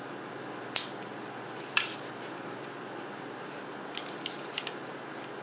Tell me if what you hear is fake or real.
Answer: real